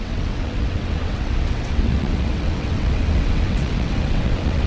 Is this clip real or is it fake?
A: fake